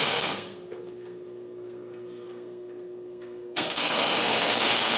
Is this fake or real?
fake